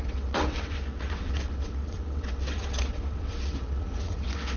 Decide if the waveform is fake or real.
fake